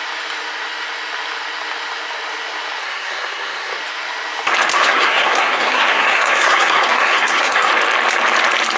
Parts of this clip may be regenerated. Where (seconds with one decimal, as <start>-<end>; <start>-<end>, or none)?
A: 2.8-3.8; 4.7-7.7